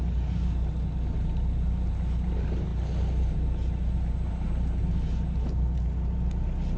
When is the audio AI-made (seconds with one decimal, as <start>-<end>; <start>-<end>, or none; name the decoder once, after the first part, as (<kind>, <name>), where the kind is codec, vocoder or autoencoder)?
none

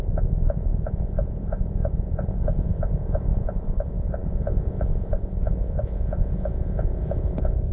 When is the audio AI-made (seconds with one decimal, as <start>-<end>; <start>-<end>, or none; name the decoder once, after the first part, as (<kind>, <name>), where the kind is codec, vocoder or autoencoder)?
0.0-7.7 (vocoder, Vocos)

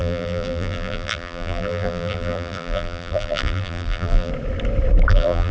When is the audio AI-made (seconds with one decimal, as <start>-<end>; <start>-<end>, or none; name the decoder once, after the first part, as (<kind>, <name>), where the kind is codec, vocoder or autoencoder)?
0.0-4.3 (vocoder, BigVGAN v2); 5.1-5.5

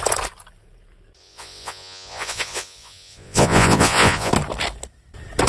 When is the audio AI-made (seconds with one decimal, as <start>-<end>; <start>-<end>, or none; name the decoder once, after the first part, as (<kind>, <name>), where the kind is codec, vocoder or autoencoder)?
1.2-4.3 (vocoder, Vocos)

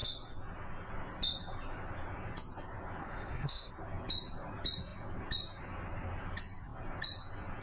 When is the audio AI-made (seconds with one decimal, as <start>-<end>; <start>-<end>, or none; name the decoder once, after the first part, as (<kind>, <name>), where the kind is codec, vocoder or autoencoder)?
3.0-3.7 (codec, SNAC)

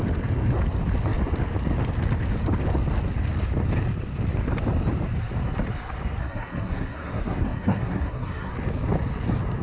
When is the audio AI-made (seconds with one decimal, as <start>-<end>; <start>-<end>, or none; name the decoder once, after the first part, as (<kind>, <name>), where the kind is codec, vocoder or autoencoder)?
6.2-8.5 (codec, SNAC)